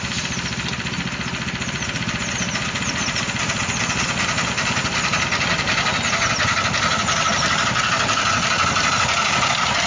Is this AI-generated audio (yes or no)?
no